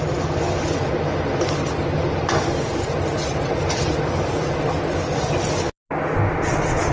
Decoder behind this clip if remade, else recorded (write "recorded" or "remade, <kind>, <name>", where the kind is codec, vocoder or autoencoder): recorded